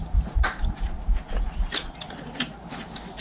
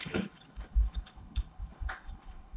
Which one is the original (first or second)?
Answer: first